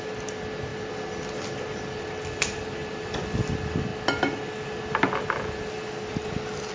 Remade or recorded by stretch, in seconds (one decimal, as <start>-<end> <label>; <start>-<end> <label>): 0.0-0.7 recorded; 0.7-2.4 remade; 2.4-2.8 recorded; 2.8-3.5 remade; 3.5-6.7 recorded